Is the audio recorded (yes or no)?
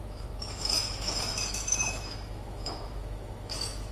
no